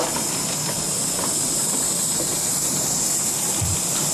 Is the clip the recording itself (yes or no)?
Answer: yes